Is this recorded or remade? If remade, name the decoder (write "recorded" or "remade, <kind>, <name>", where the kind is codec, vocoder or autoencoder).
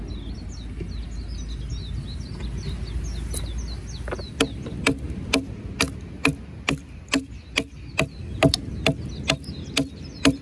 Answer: recorded